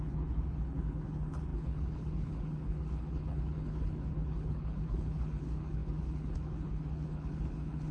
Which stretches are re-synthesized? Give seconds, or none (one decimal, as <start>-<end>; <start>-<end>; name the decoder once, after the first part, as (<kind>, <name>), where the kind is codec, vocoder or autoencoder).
0.0-7.9 (codec, HILCodec)